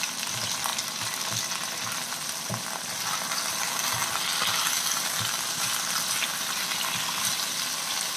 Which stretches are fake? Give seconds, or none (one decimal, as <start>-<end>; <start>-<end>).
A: none